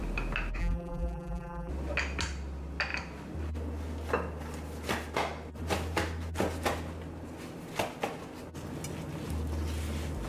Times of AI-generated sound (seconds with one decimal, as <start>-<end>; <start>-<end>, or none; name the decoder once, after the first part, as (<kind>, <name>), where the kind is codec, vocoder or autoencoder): 0.6-1.7 (vocoder, BigVGAN v2)